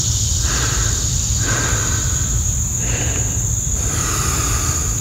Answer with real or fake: real